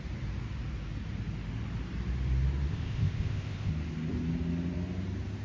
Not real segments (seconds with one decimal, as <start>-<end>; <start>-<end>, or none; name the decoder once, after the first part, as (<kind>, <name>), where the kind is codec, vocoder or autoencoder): 2.7-3.7 (codec, ZipCodec)